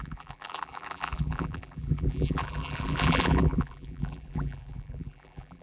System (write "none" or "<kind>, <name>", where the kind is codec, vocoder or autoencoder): vocoder, BigVGAN v2